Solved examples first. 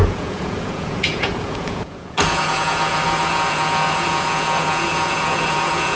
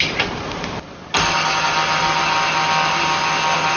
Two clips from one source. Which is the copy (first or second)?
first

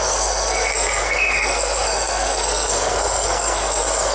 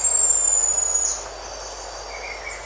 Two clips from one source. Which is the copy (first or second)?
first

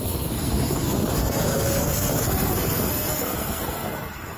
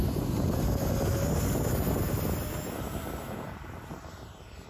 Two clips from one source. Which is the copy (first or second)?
first